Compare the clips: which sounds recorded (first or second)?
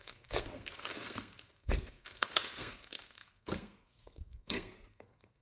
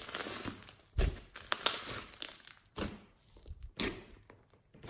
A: second